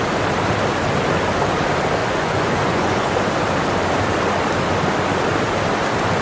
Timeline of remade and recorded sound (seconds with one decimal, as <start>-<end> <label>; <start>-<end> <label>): 0.0-2.0 recorded; 2.0-3.1 remade; 3.1-6.2 recorded